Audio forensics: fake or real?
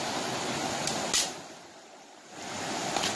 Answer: real